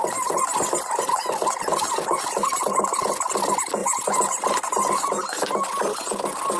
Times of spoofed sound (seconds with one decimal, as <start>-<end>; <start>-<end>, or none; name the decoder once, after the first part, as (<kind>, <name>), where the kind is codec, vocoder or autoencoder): none